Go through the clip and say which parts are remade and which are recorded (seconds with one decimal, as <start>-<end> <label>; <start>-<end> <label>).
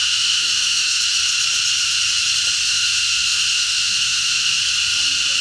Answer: 0.0-1.0 remade; 1.0-2.6 recorded; 2.6-4.6 remade; 4.6-5.4 recorded